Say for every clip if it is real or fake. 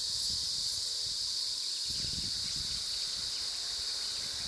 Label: real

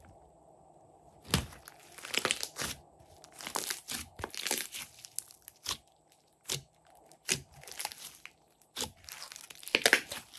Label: real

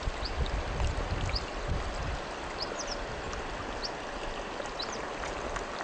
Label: real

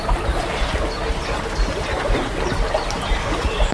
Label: real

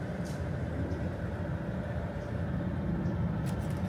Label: real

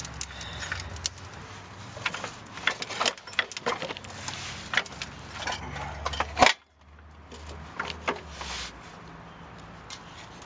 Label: real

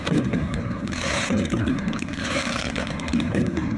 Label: fake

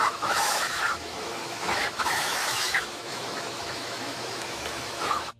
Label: fake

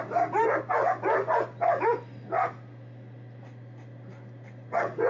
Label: real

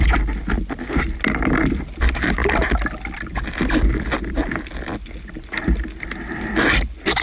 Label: real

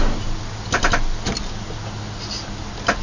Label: real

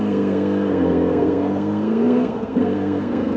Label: fake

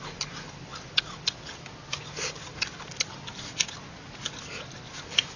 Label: real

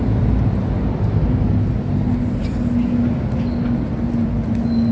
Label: real